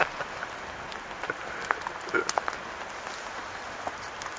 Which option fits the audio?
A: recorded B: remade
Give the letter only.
A